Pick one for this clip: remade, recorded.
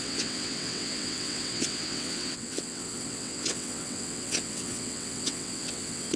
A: remade